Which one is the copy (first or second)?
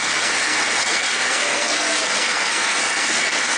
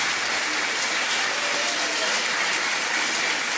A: first